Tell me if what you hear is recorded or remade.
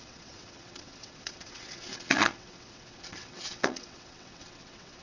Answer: remade